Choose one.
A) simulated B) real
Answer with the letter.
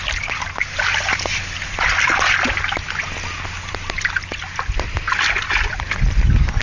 B